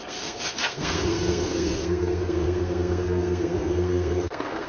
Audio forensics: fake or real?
fake